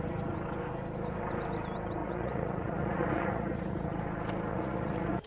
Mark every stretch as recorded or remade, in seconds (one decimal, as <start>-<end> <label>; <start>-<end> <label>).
0.0-2.0 recorded; 2.0-4.0 remade; 4.0-4.5 recorded; 4.5-5.3 remade

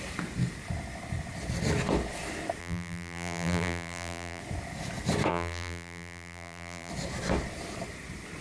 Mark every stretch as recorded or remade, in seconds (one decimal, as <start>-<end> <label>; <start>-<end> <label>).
0.0-2.6 recorded; 2.6-4.4 remade; 4.4-5.3 recorded; 5.3-6.9 remade; 6.9-8.4 recorded

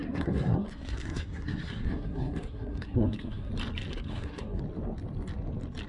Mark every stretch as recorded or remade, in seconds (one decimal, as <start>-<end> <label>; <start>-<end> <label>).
0.0-3.5 remade; 3.5-3.9 recorded; 3.9-4.6 remade; 4.6-5.9 recorded

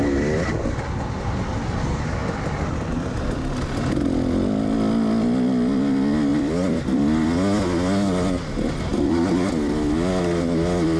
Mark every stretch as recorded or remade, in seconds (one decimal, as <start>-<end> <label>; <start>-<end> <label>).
0.0-2.2 recorded; 2.2-2.9 remade; 2.9-6.3 recorded; 6.3-7.6 remade; 7.6-8.9 recorded; 8.9-9.5 remade; 9.5-11.0 recorded

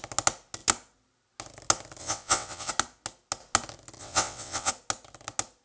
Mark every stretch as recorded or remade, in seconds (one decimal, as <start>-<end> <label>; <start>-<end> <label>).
0.0-2.0 recorded; 2.0-2.7 remade; 2.7-4.0 recorded; 4.0-4.7 remade; 4.7-5.6 recorded

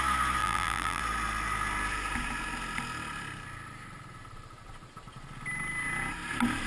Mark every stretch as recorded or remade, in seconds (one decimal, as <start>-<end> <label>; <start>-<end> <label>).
0.0-0.4 recorded; 0.4-1.0 remade; 1.0-6.7 recorded